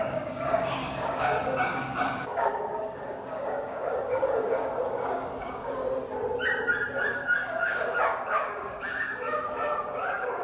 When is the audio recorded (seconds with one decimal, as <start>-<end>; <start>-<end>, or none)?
5.8-7.1